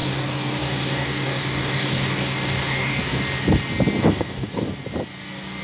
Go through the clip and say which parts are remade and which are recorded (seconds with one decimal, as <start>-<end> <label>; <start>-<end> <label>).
0.0-3.2 remade; 3.2-4.0 recorded; 4.0-4.7 remade; 4.7-5.6 recorded